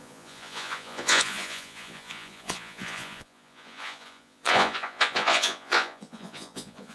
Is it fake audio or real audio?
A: fake